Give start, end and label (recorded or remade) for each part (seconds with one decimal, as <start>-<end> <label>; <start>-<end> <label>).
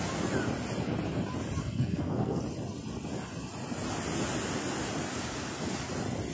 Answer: 0.0-1.6 recorded; 1.6-2.4 remade; 2.4-6.3 recorded